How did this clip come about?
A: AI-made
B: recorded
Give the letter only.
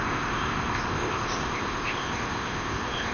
A